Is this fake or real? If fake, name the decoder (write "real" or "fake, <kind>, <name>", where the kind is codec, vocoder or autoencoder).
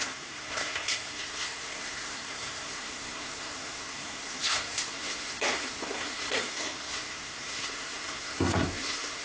fake, codec, SNAC